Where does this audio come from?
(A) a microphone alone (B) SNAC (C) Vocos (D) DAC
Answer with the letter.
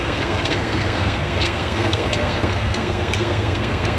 B